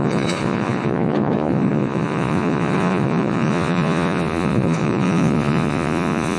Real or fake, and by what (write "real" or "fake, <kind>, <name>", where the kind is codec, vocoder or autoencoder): fake, vocoder, Vocos